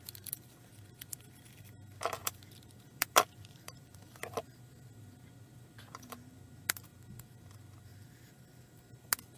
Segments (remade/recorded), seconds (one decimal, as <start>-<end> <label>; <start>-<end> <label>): 0.0-2.2 recorded; 2.2-5.0 remade; 5.0-7.9 recorded; 7.9-8.9 remade; 8.9-9.4 recorded